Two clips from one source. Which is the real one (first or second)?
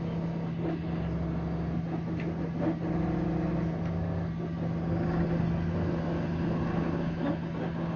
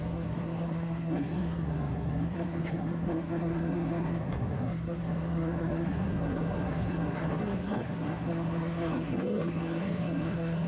first